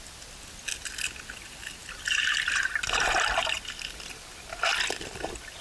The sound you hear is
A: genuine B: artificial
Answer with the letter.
A